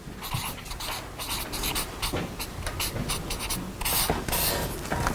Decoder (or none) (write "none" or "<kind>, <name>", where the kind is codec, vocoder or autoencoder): none